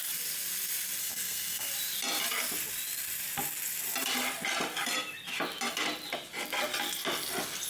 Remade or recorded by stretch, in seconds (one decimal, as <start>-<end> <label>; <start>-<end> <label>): 0.0-1.0 recorded; 1.0-1.7 remade; 1.7-7.7 recorded